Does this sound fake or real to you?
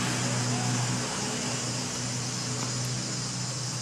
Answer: real